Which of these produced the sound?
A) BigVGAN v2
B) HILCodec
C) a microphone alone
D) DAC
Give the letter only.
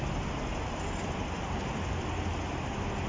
C